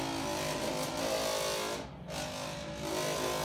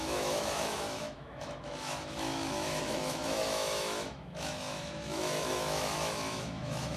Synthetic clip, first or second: second